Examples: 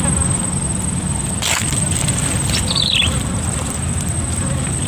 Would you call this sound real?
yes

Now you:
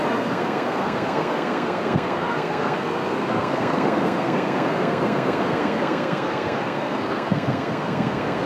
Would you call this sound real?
no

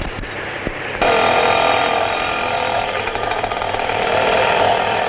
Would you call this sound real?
no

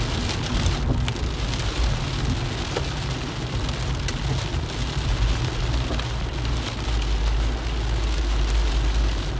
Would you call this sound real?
yes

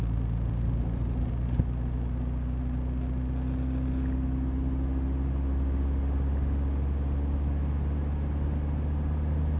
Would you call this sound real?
yes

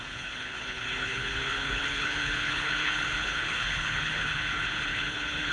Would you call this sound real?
no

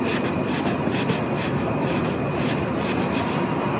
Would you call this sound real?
yes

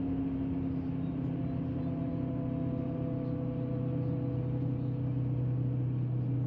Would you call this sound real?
yes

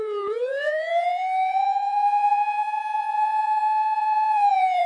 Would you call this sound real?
no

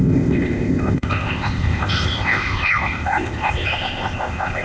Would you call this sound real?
no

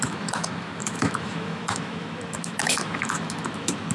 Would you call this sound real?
no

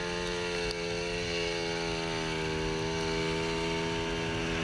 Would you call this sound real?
yes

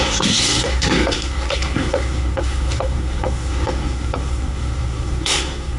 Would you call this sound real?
no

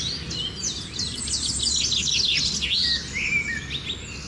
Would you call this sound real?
yes